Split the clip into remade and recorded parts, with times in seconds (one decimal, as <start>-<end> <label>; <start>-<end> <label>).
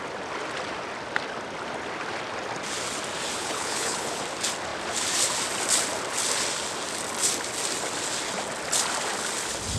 0.0-3.4 recorded; 3.4-4.2 remade; 4.2-9.8 recorded